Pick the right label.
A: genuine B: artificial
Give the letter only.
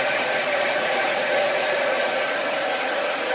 B